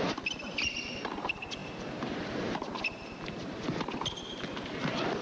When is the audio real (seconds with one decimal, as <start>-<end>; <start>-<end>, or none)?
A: 0.0-5.2